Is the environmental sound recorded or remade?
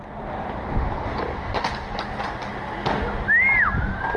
recorded